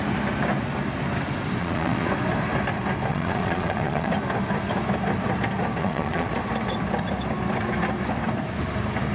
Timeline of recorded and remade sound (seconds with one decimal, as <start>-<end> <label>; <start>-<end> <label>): 0.0-1.6 recorded; 1.6-2.1 remade; 2.1-3.1 recorded; 3.1-4.1 remade; 4.1-5.8 recorded; 5.8-6.3 remade; 6.3-9.1 recorded